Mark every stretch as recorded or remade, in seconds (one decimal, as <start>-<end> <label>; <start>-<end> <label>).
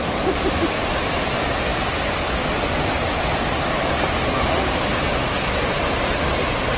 0.0-6.8 recorded